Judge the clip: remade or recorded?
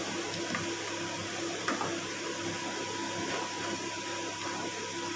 recorded